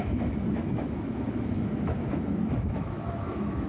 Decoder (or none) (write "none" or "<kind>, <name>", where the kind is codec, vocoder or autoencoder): autoencoder, DAC-VAE